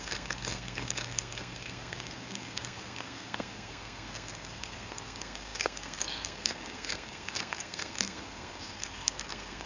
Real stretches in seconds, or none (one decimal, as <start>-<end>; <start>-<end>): none